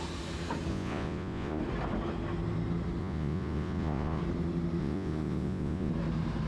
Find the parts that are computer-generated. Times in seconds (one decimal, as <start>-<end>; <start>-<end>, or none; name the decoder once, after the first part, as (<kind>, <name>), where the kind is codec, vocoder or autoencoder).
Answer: 0.7-1.6 (vocoder, Vocos); 3.0-4.2; 4.8-5.9